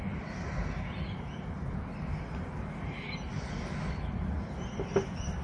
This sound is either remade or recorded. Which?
recorded